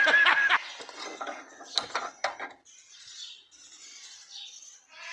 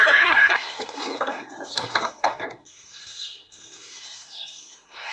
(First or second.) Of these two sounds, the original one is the first